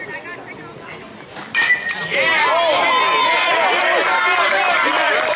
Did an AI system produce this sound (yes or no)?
no